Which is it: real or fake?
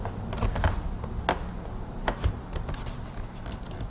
real